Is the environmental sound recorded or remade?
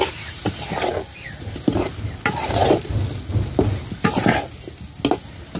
recorded